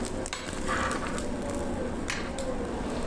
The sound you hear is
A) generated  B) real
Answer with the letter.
B